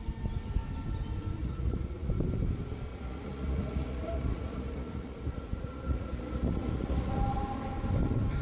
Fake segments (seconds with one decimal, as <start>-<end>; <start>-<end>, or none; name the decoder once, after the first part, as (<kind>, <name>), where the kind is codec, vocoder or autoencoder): 1.4-2.1 (vocoder, Vocos); 2.9-7.1